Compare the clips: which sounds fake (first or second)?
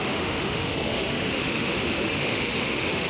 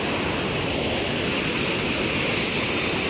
first